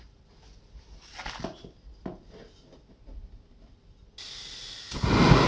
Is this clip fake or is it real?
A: real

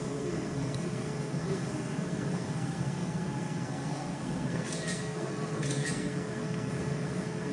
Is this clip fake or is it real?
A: fake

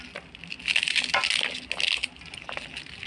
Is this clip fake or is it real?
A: real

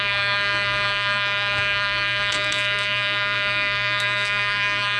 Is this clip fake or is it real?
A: fake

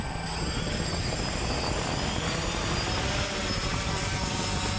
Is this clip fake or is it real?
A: real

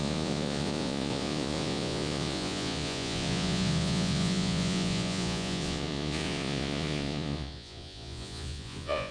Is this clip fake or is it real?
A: fake